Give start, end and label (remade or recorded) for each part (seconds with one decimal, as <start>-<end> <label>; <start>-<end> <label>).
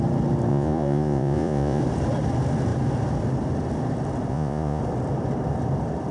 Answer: 0.0-0.5 recorded; 0.5-1.8 remade; 1.8-4.3 recorded; 4.3-4.8 remade; 4.8-6.1 recorded